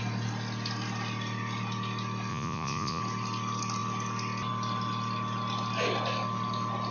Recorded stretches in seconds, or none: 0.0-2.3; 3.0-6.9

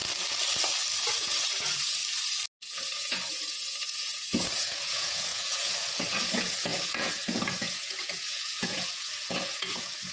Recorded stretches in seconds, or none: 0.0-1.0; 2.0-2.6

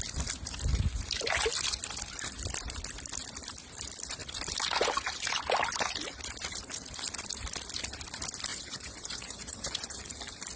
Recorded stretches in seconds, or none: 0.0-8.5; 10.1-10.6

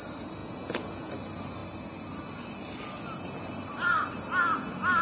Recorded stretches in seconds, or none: 0.0-0.4; 1.1-5.0

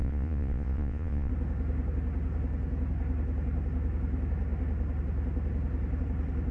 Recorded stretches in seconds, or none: 1.3-6.5

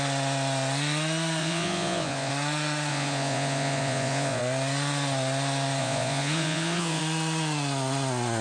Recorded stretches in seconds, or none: 0.0-1.4; 2.3-2.9; 4.4-5.8; 7.0-8.4